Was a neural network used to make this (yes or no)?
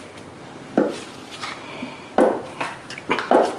yes